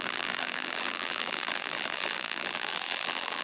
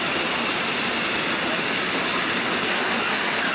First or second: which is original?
second